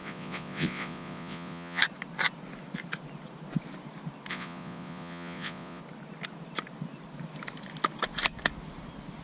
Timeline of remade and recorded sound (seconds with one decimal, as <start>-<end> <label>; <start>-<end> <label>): 0.0-1.8 remade; 1.8-4.3 recorded; 4.3-5.8 remade; 5.8-9.2 recorded